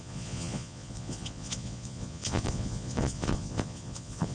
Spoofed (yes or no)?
yes